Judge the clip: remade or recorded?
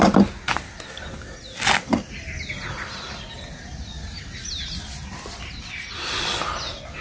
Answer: recorded